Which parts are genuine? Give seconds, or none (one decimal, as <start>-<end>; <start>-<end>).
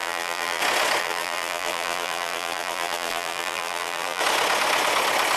0.6-1.0; 4.2-5.4